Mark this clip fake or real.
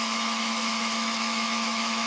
fake